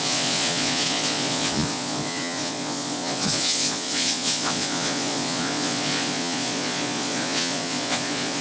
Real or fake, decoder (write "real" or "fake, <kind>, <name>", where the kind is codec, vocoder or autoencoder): fake, vocoder, Vocos